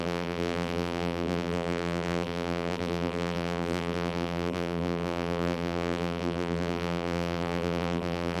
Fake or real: fake